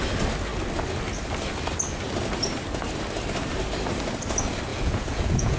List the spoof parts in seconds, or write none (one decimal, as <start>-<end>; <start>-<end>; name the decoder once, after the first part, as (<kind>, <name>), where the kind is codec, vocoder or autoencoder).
4.7-5.6 (vocoder, Vocos)